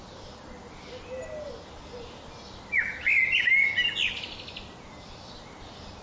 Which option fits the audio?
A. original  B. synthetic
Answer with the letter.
A